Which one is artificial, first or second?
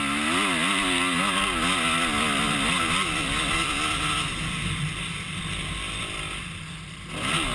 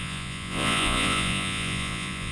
second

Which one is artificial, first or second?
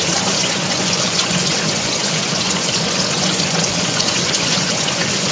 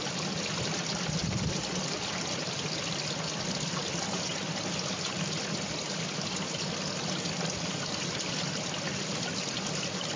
first